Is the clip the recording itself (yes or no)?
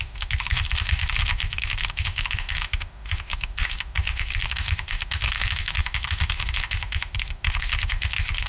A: no